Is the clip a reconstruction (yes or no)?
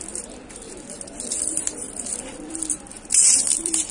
yes